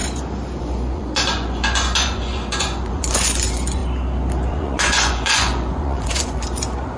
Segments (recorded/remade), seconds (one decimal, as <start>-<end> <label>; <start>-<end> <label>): 0.0-0.6 recorded; 0.6-3.8 remade; 3.8-4.5 recorded; 4.5-7.0 remade